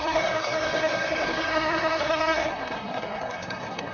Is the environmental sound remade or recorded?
remade